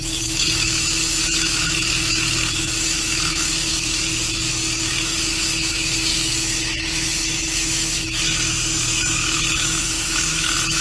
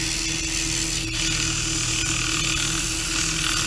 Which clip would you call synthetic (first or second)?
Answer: first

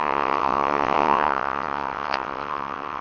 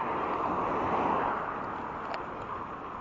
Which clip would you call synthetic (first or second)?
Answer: first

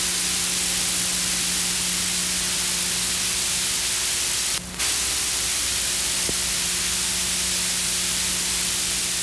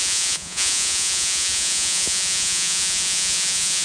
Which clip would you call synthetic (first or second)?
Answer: second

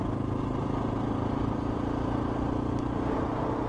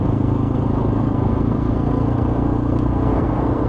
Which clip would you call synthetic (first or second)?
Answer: second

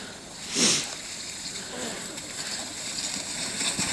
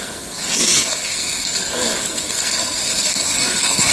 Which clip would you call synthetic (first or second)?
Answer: second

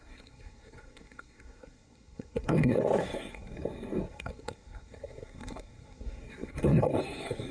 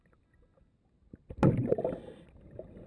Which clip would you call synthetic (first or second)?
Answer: first